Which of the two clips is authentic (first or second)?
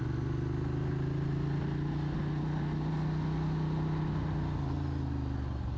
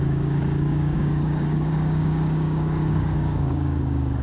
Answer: first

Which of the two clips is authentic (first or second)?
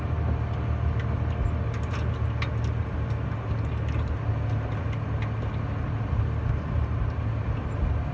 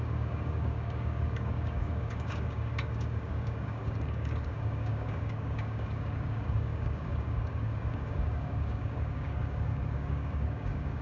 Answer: first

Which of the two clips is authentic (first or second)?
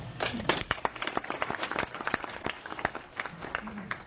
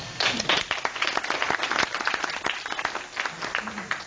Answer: second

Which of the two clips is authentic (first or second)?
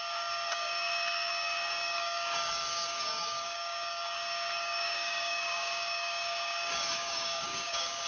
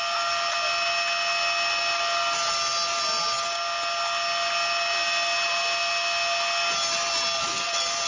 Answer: second